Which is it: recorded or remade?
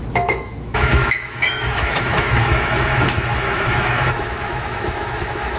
remade